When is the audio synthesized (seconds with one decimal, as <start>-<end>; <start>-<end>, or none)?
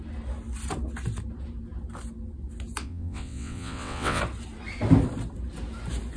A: 2.8-4.2